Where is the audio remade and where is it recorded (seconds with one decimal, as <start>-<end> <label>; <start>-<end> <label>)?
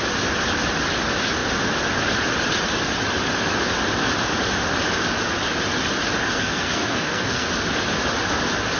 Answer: 0.0-6.2 recorded; 6.2-7.5 remade; 7.5-8.8 recorded